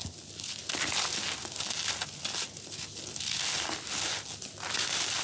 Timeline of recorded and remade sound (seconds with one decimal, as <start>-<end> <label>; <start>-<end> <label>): 0.0-5.2 recorded